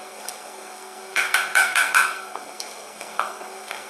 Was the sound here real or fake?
fake